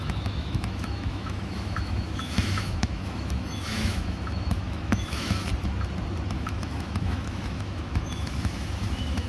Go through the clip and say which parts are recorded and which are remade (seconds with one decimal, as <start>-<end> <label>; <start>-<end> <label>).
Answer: 0.0-5.5 remade; 5.5-6.3 recorded; 6.3-9.3 remade